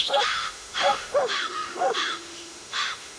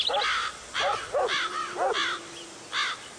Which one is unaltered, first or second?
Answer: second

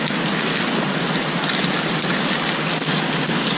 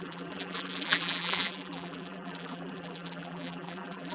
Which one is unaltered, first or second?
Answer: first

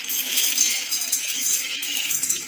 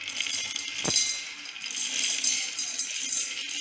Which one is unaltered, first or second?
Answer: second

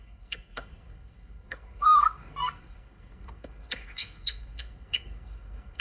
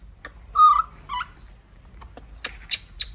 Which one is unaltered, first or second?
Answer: second